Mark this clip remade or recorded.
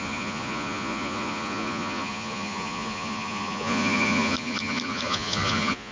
remade